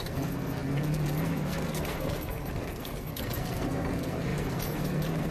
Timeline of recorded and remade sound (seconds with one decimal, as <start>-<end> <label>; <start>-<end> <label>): 0.0-5.3 remade